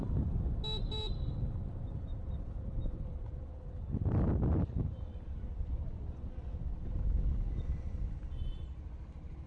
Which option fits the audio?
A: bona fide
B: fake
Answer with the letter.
A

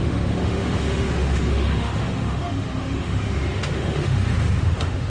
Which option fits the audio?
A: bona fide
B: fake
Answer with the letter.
B